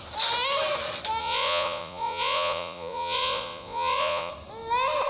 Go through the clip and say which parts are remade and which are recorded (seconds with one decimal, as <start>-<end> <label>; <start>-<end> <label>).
0.0-1.2 recorded; 1.2-4.3 remade; 4.3-5.1 recorded